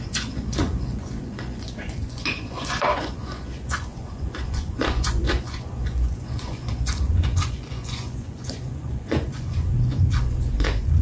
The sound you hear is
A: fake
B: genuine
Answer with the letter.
A